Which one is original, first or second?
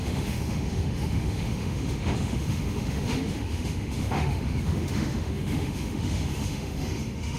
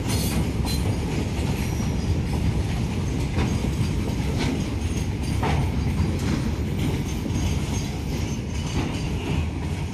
second